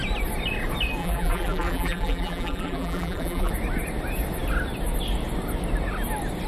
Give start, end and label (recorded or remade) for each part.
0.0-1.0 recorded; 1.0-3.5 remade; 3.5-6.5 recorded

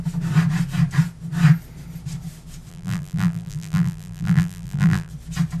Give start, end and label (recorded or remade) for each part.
0.0-2.7 recorded; 2.7-5.1 remade; 5.1-5.6 recorded